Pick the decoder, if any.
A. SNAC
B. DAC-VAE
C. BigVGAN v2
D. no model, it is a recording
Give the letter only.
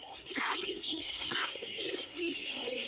A